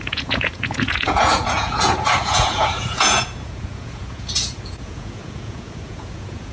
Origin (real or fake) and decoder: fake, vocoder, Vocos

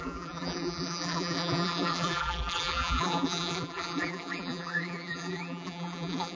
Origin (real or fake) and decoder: fake, vocoder, BigVGAN v2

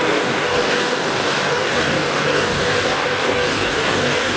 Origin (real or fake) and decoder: fake, codec, DAC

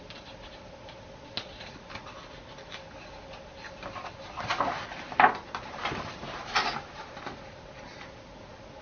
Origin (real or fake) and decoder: real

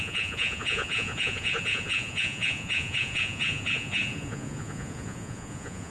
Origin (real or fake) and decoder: fake, vocoder, Vocos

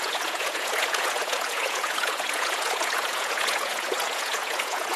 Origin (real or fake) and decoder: fake, vocoder, Vocos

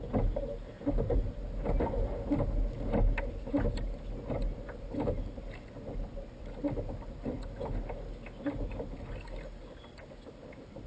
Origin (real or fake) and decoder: real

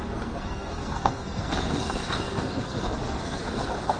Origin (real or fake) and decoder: fake, codec, SNAC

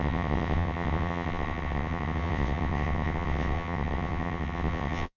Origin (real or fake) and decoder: fake, vocoder, WaveNeXt